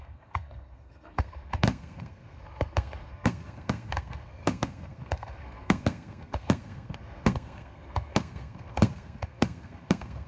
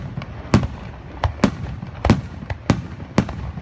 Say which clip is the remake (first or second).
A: first